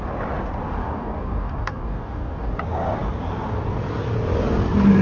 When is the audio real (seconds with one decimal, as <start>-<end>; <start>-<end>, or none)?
0.0-0.8; 2.5-5.0